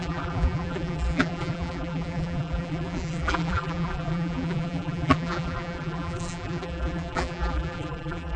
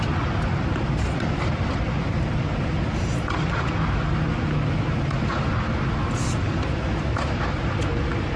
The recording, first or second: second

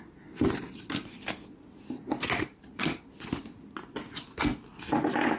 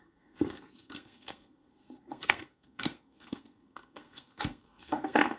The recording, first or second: first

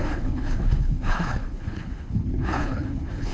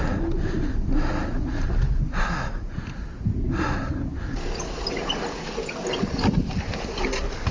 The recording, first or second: second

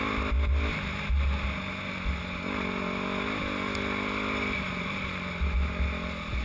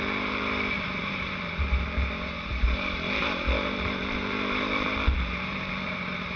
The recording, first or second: first